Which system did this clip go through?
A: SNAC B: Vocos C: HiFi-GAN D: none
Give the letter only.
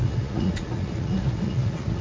B